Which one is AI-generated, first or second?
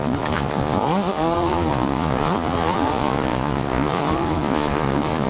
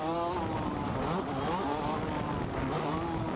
first